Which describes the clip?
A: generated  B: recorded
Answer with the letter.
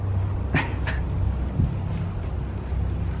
B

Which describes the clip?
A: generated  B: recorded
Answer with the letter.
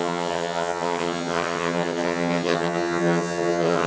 A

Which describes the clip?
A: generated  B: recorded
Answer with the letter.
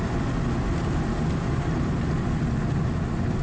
B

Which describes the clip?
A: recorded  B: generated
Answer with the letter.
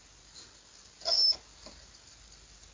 A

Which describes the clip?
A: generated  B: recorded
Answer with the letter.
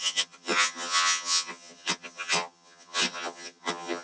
A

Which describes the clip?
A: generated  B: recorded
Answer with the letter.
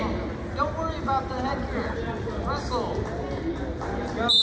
B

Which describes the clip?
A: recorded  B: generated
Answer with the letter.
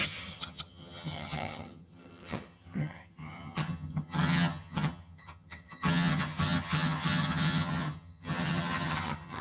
B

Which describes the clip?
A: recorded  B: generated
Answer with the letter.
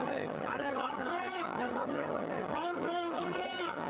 B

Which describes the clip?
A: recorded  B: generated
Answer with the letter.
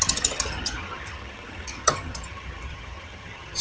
B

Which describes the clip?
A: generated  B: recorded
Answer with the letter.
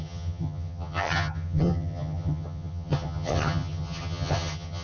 A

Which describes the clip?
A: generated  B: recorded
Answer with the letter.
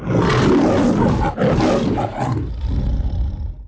B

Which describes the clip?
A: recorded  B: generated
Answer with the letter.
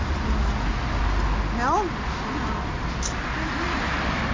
A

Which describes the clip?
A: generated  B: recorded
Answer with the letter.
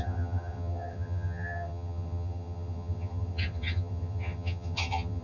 A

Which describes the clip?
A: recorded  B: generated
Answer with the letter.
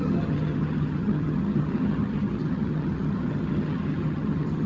B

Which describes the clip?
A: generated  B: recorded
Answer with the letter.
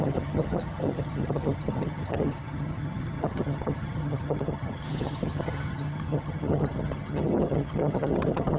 A